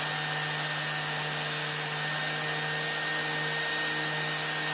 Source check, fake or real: real